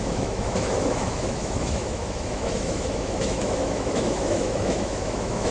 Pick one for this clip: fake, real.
fake